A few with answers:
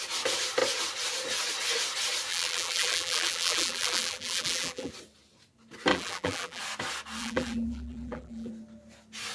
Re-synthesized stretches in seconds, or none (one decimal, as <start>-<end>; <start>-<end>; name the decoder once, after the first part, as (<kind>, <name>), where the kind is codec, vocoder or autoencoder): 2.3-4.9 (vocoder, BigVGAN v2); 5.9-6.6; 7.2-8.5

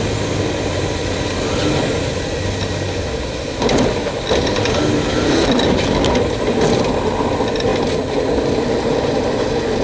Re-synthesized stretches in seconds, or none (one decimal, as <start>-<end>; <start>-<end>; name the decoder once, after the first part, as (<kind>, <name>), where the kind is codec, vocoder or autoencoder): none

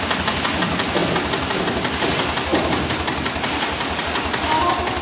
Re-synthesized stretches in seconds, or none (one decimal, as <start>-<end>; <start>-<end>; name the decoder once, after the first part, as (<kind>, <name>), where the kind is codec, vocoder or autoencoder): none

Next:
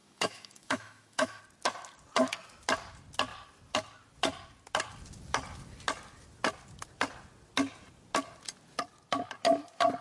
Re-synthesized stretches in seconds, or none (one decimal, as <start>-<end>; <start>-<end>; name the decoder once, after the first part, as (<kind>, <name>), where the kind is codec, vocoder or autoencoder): 0.0-1.4 (autoencoder, DAC-VAE)

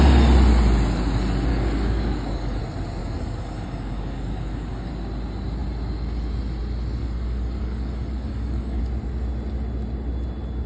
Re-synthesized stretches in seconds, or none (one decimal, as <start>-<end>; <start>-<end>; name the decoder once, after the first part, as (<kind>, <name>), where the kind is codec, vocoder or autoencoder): 1.5-2.6 (codec, DAC); 3.0-4.9; 7.0-8.8

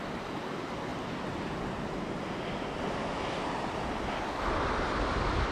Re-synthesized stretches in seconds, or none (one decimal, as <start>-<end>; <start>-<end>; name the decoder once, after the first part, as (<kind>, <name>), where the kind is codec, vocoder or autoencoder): none